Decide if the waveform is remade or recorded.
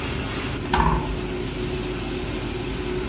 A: recorded